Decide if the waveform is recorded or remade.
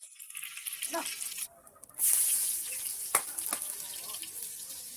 recorded